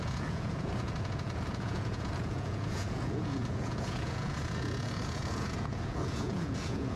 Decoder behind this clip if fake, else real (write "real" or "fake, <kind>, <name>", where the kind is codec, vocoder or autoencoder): fake, vocoder, Vocos